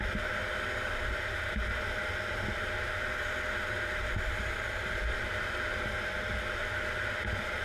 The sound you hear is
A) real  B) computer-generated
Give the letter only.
A